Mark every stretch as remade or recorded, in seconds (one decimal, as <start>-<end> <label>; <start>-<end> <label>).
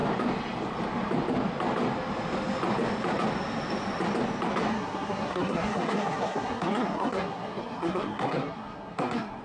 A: 0.0-4.7 recorded; 4.7-9.4 remade